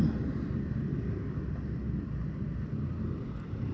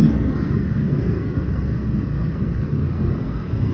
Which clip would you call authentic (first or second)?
first